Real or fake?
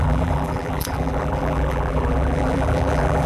fake